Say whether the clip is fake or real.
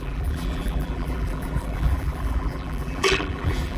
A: fake